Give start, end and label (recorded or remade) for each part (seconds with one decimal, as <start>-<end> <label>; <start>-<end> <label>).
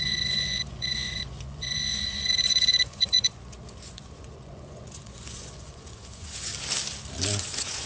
0.0-6.5 remade; 6.5-7.4 recorded; 7.4-7.9 remade